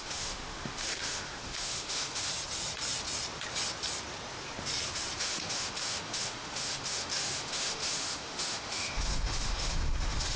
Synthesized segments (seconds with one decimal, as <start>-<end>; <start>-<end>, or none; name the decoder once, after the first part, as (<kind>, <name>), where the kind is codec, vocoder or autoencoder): 0.0-2.3 (autoencoder, DAC-VAE); 5.2-10.4